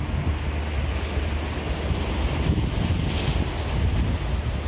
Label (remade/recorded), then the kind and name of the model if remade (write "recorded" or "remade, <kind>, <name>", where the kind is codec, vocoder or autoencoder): recorded